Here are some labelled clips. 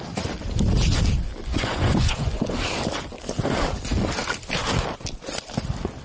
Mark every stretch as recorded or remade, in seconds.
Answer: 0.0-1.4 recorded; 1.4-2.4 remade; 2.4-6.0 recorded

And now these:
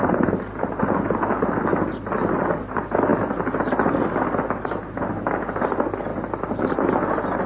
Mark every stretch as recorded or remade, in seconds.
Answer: 0.0-7.5 recorded

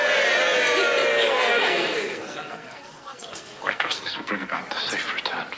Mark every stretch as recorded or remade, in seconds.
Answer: 0.0-1.2 recorded; 1.2-4.6 remade; 4.6-5.6 recorded

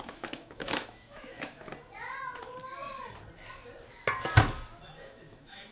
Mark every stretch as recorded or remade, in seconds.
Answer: 0.0-1.7 remade; 1.7-4.9 recorded; 4.9-5.7 remade